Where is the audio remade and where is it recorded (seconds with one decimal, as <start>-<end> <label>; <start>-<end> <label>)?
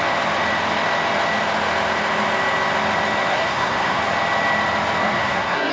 0.0-3.3 recorded; 3.3-4.0 remade; 4.0-5.0 recorded; 5.0-5.7 remade